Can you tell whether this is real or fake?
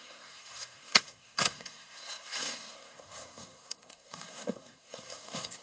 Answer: fake